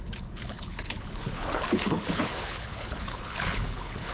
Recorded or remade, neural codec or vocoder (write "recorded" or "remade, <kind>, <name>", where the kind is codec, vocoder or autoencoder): remade, codec, HILCodec